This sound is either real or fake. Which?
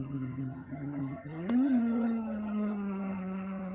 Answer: fake